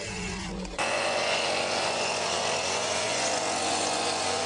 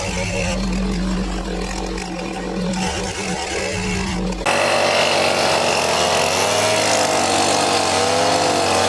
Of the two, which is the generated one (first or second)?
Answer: first